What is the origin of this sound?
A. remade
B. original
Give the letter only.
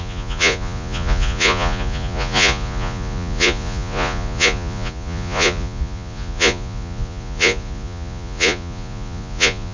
A